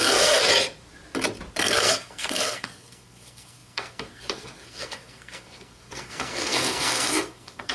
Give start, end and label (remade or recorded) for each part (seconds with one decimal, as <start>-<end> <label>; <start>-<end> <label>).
0.0-0.5 remade; 0.5-1.6 recorded; 1.6-7.7 remade